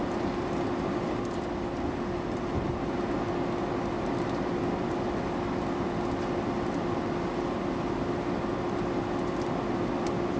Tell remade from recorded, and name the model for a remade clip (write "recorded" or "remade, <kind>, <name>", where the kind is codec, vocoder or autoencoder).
recorded